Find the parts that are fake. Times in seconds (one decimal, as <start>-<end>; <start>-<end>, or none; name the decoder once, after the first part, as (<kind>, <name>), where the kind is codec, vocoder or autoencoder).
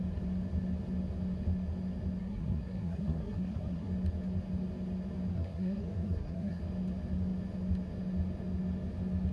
2.2-3.9 (codec, SNAC); 5.3-6.6